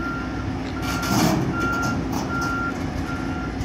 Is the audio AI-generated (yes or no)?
no